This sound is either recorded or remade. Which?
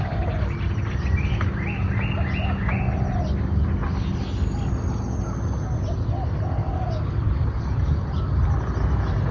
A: recorded